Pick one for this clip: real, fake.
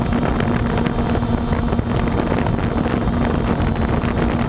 real